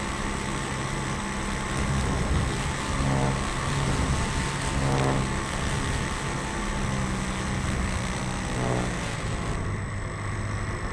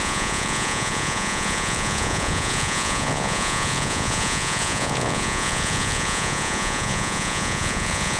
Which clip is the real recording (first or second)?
first